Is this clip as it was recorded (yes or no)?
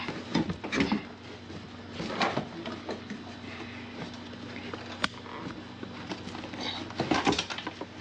yes